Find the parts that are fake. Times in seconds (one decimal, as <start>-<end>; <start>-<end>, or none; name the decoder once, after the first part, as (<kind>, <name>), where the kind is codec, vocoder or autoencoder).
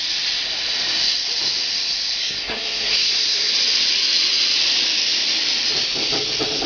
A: 2.2-3.5 (codec, SNAC)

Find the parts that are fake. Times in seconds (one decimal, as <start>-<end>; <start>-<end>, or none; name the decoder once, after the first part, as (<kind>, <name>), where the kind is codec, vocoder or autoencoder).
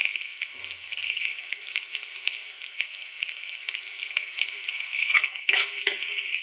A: 0.0-6.4 (codec, SNAC)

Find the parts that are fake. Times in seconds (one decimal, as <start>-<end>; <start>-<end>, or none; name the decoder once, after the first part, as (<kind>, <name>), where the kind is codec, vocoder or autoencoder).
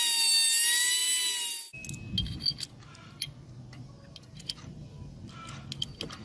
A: none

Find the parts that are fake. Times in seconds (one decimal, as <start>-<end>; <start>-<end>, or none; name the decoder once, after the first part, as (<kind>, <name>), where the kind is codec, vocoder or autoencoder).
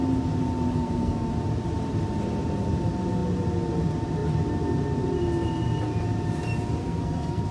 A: 0.7-1.3 (codec, SNAC); 6.8-7.5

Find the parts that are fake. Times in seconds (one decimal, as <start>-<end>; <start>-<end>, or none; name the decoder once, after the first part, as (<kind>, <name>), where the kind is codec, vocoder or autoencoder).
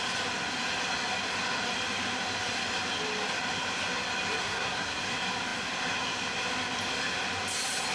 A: 4.4-5.0 (codec, SNAC)